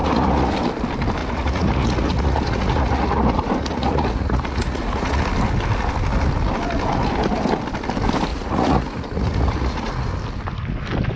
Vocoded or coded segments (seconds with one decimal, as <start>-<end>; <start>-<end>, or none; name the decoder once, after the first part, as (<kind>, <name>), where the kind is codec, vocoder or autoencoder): 0.0-0.5 (vocoder, Vocos); 1.2-5.2; 8.3-10.1